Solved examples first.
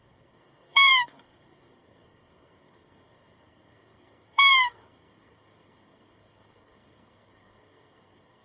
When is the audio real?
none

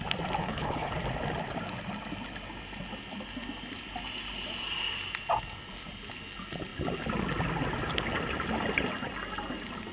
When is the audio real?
0.0-0.4; 0.9-9.9

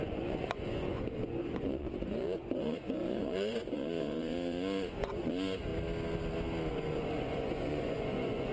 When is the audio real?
5.7-6.7

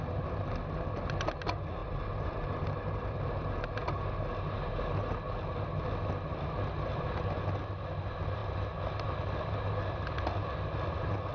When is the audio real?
0.0-11.3

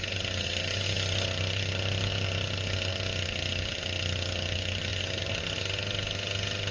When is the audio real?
0.0-6.7

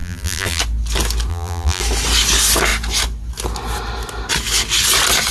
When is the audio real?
0.6-1.3; 1.8-5.3

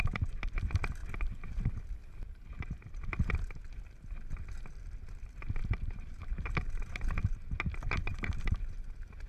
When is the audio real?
0.0-5.6; 6.5-8.1; 8.6-9.3

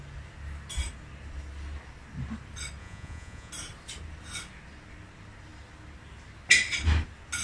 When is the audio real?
0.0-2.8; 3.5-7.4